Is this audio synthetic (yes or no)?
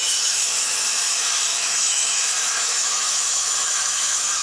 yes